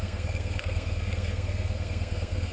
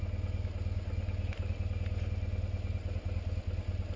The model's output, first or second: first